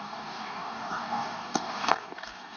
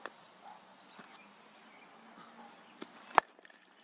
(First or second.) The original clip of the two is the second